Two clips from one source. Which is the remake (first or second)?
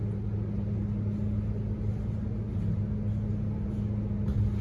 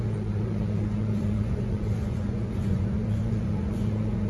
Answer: second